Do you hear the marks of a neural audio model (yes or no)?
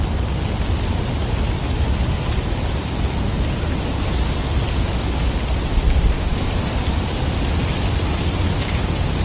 no